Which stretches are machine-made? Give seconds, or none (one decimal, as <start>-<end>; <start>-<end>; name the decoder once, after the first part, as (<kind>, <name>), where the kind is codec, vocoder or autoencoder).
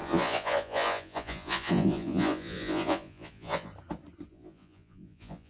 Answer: 0.0-3.7 (vocoder, Vocos); 4.3-5.5